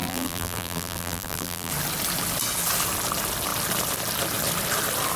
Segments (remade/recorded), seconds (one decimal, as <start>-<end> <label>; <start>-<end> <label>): 0.0-1.7 remade; 1.7-5.2 recorded